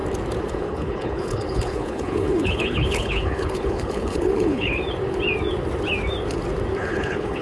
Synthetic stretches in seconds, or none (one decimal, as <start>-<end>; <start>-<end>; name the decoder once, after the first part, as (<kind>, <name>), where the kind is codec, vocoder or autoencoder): 0.5-4.8 (codec, HILCodec); 6.8-7.4